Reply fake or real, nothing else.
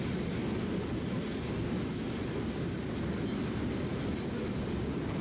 real